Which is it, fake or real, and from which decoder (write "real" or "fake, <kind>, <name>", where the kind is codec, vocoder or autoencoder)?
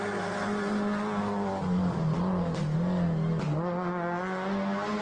real